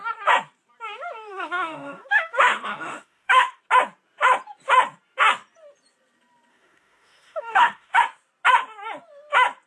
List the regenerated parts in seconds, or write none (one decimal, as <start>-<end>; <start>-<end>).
1.3-3.6; 6.5-8.0